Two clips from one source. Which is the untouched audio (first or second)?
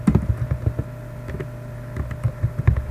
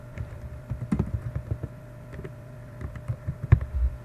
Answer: first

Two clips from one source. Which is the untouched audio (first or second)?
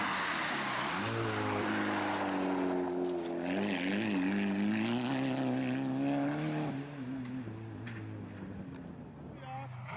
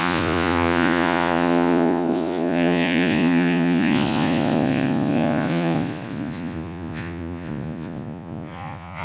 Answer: first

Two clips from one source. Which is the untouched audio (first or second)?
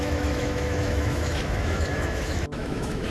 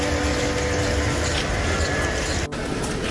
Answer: second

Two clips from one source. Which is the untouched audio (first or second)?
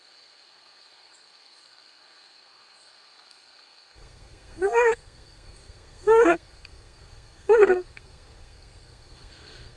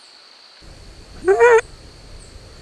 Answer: second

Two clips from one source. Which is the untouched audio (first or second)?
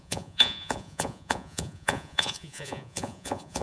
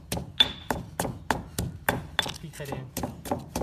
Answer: second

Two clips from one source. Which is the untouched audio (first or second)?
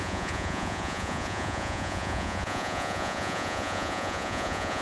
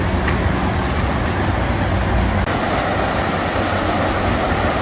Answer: second